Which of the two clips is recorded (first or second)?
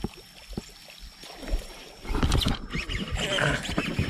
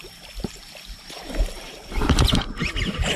first